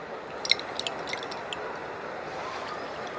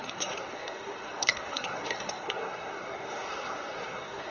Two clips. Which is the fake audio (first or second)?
second